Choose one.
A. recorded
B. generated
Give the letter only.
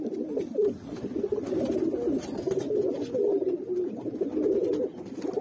B